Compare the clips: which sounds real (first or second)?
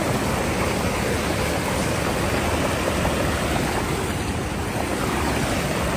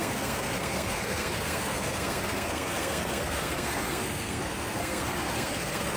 first